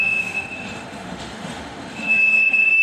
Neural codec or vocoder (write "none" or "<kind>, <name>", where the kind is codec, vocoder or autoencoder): autoencoder, DAC-VAE